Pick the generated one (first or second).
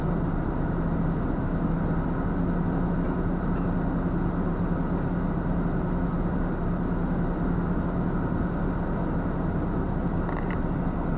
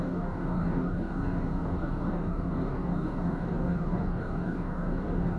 second